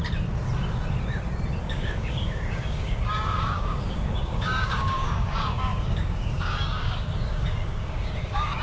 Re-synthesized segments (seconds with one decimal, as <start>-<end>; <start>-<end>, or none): 1.6-8.6